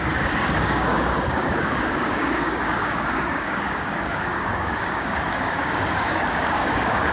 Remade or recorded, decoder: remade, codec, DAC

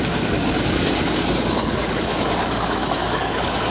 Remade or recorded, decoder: remade, codec, DAC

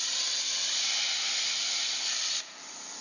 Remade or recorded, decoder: recorded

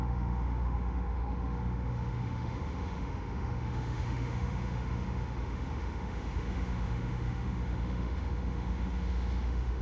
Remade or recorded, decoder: remade, autoencoder, DAC-VAE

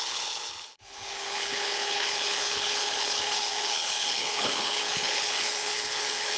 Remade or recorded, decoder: remade, codec, HILCodec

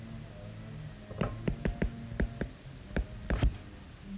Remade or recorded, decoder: recorded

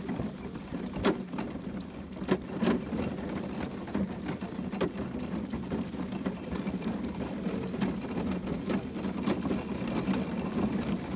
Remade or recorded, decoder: recorded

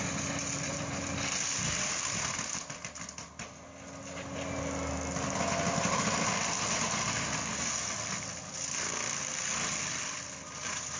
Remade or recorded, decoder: recorded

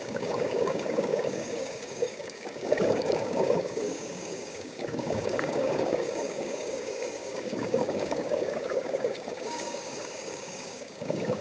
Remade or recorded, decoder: remade, codec, DAC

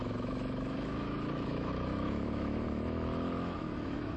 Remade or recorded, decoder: remade, autoencoder, DAC-VAE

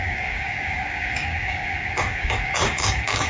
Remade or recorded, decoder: remade, codec, DAC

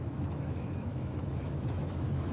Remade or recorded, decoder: remade, autoencoder, DAC-VAE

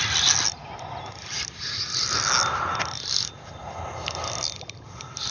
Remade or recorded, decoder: recorded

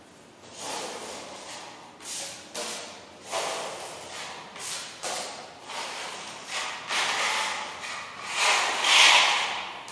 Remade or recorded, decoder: recorded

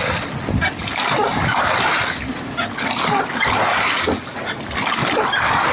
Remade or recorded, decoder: recorded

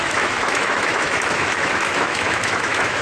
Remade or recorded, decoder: remade, autoencoder, DAC-VAE